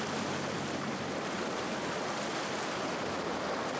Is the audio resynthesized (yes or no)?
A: no